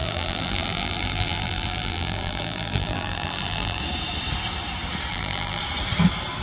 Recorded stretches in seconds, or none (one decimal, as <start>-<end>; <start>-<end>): 3.8-5.1; 5.6-6.4